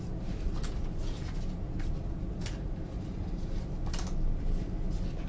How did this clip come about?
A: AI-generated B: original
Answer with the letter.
B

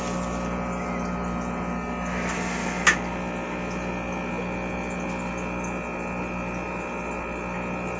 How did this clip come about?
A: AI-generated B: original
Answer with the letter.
B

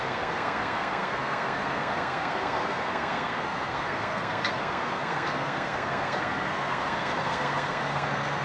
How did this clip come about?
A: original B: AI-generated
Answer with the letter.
B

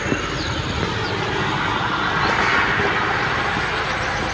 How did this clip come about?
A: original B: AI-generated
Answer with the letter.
A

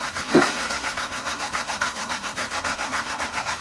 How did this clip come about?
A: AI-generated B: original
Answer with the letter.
A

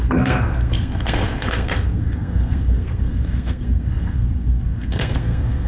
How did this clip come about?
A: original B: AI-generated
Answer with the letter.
B